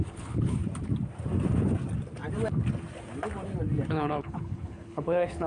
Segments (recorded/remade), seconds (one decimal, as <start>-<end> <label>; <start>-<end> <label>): 0.0-0.6 remade; 0.6-3.9 recorded; 3.9-5.5 remade